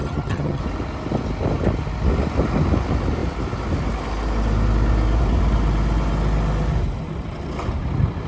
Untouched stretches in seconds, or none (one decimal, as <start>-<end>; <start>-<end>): 0.6-8.3